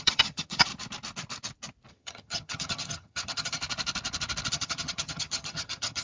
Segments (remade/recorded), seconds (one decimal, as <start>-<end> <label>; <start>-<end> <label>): 0.0-0.7 remade; 0.7-1.9 recorded; 1.9-3.6 remade; 3.6-4.5 recorded; 4.5-6.0 remade